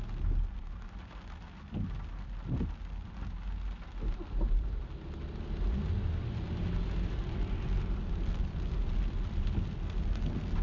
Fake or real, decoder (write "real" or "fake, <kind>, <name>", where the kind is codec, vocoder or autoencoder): real